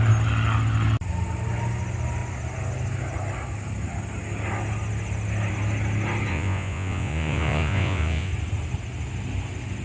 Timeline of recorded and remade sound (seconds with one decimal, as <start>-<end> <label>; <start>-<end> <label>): 0.0-6.3 recorded; 6.3-8.3 remade; 8.3-9.8 recorded